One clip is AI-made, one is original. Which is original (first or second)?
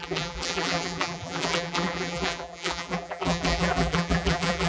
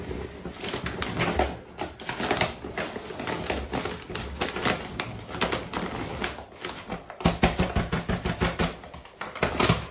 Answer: second